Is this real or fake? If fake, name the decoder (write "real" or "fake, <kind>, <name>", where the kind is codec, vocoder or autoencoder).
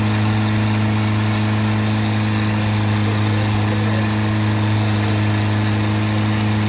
real